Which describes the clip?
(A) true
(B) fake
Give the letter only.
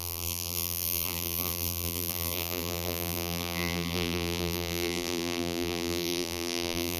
B